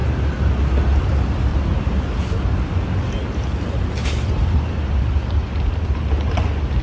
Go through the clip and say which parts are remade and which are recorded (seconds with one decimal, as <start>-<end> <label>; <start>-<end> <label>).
0.0-1.5 recorded; 1.5-2.3 remade; 2.3-4.0 recorded; 4.0-5.0 remade; 5.0-5.4 recorded; 5.4-6.1 remade; 6.1-6.8 recorded